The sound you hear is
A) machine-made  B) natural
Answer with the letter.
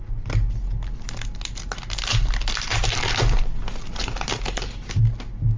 B